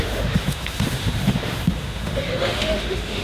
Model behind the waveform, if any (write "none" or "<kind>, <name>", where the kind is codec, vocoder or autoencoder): autoencoder, DAC-VAE